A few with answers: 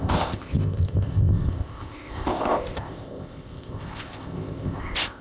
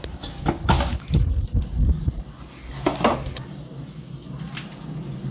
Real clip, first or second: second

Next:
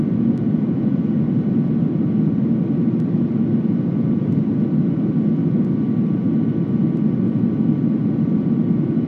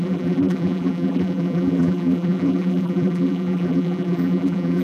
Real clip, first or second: first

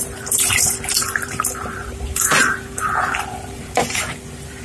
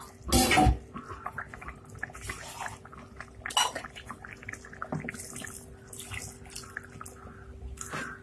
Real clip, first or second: second